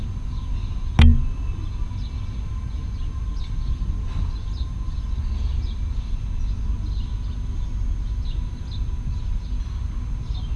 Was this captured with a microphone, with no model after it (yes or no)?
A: yes